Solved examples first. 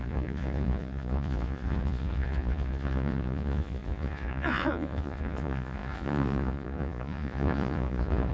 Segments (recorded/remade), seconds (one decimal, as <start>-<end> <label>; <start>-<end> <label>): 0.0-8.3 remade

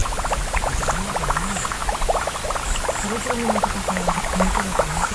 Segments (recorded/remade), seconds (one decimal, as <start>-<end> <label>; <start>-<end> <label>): 0.0-1.2 recorded; 1.2-1.8 remade; 1.8-3.9 recorded; 3.9-5.1 remade

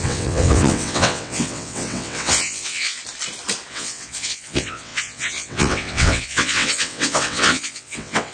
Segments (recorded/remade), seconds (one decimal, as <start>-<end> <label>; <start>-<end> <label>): 0.0-3.0 remade; 3.0-3.7 recorded; 3.7-8.3 remade

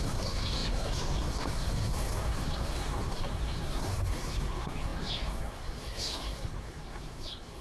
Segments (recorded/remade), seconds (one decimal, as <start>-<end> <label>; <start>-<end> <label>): 0.0-7.6 remade